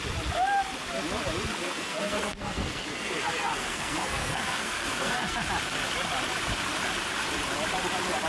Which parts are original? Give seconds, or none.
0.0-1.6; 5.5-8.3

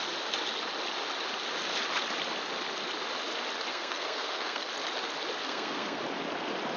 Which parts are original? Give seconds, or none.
0.0-3.7; 4.7-5.4; 6.0-6.8

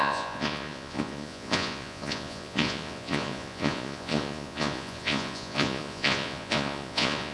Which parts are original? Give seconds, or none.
none

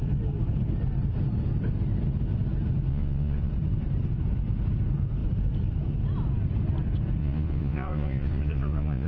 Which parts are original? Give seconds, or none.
0.0-2.9; 3.5-7.2

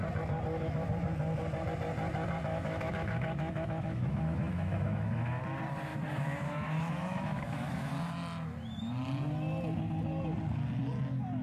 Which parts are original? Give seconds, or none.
0.0-2.5; 5.4-5.9; 7.9-11.4

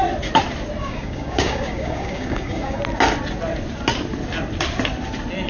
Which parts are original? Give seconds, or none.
0.0-0.8; 2.8-5.5